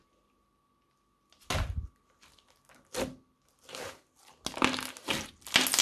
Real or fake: real